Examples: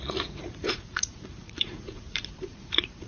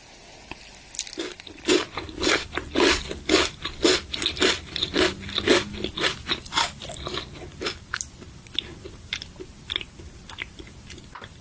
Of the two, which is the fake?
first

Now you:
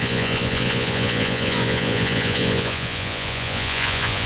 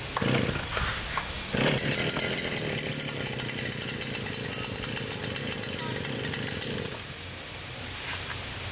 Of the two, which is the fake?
first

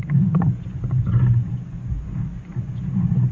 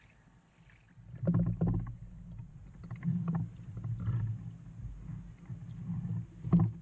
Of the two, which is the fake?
first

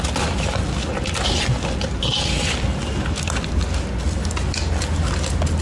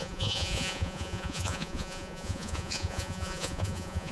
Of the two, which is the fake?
second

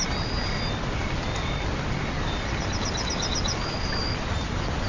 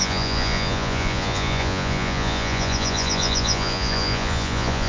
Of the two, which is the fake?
second